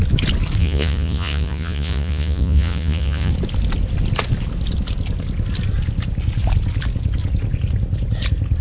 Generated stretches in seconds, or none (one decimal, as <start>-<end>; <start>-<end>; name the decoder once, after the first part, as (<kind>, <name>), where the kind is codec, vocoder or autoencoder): 0.6-3.3 (vocoder, Vocos)